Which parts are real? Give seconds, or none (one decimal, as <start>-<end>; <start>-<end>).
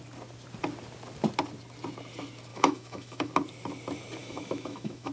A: 0.0-2.5; 3.3-4.2